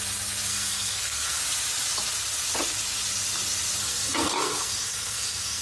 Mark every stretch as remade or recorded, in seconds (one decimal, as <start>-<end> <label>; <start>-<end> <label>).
0.0-0.5 recorded; 0.5-1.4 remade; 1.4-3.8 recorded; 3.8-5.6 remade